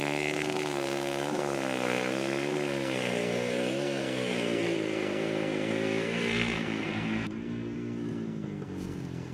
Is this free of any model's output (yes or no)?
no